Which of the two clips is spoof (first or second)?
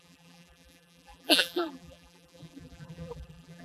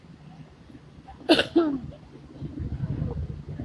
first